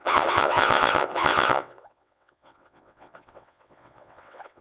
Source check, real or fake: fake